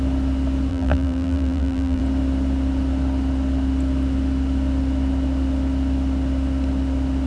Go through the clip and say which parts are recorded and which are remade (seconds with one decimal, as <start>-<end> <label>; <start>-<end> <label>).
0.0-0.7 recorded; 0.7-2.0 remade; 2.0-7.3 recorded